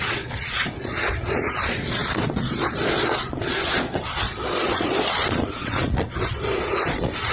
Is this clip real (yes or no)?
no